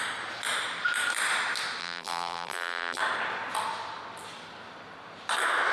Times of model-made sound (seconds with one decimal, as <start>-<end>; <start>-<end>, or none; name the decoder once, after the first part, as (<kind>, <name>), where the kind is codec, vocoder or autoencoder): 1.8-3.0 (vocoder, BigVGAN v2)